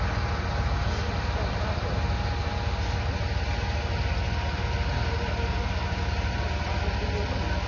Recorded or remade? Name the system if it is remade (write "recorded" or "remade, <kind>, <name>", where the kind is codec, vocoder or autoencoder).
recorded